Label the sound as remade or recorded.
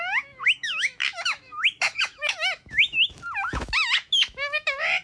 remade